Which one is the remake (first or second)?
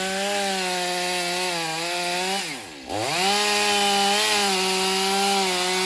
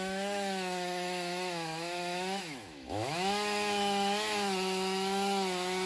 second